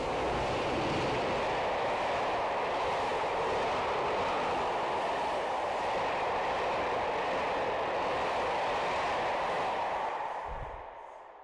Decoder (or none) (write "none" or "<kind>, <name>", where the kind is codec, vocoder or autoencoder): vocoder, BigVGAN v2